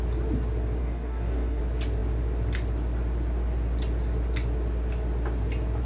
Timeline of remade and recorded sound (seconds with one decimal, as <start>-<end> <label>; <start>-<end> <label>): 0.0-0.8 recorded; 0.8-1.6 remade; 1.6-5.8 recorded